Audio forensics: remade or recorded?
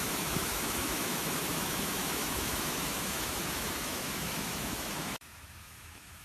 remade